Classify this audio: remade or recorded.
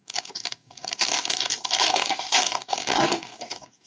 remade